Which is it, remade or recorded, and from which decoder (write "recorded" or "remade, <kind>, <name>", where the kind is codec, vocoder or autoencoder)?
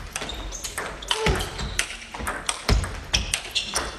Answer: recorded